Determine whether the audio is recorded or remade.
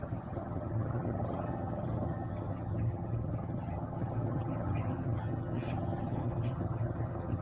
remade